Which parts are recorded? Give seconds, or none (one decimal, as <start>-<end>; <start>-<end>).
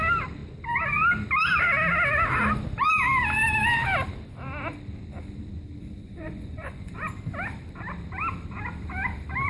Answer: 0.0-5.8; 7.1-9.5